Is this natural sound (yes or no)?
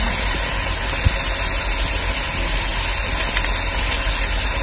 yes